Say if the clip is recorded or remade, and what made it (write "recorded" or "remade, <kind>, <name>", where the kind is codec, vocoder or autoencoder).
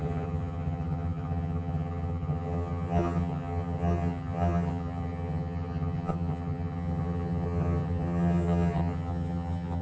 remade, vocoder, HiFi-GAN